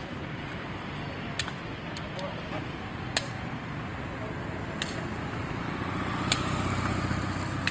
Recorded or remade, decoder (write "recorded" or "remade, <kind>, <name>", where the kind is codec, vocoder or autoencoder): recorded